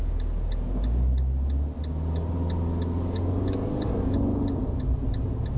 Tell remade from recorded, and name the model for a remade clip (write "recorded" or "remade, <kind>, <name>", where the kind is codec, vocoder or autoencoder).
recorded